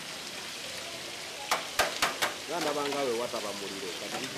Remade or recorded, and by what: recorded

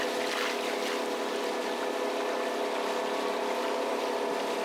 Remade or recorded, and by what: recorded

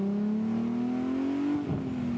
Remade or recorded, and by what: recorded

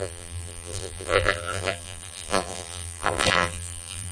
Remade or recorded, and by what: remade, vocoder, BigVGAN v2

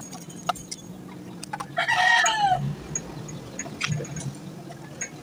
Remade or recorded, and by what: recorded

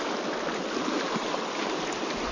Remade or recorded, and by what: recorded